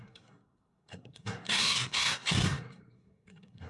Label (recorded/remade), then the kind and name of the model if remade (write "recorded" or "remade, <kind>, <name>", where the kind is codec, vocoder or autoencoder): remade, codec, SNAC